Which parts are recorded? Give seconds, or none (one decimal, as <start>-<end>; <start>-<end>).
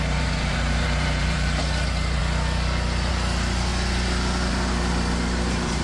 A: 2.2-3.1; 3.7-4.5